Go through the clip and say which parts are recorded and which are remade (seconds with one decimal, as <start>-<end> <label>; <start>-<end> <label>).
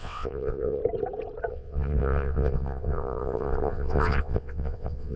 0.0-0.8 remade; 0.8-1.5 recorded; 1.5-5.2 remade